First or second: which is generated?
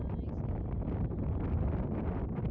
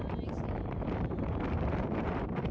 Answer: second